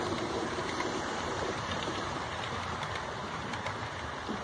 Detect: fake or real fake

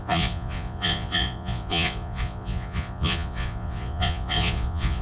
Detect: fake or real fake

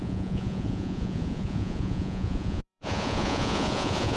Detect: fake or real fake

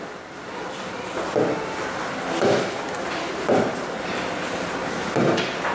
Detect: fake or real real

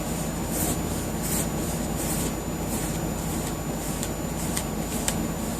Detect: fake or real real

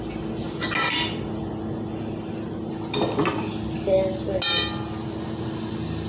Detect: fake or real real